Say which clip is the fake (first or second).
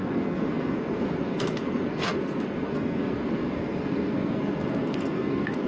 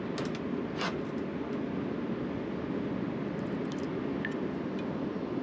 first